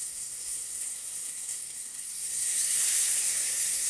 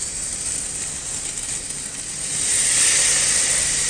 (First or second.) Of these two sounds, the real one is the second